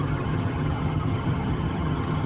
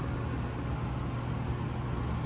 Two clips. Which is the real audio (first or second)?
second